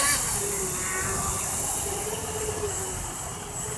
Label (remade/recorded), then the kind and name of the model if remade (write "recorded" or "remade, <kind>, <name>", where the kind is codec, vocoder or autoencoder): recorded